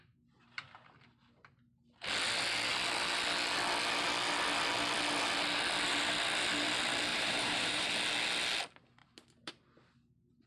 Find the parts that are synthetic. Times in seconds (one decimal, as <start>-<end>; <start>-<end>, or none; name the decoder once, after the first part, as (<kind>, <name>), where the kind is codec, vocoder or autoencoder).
7.1-7.9 (vocoder, BigVGAN v2); 9.0-9.5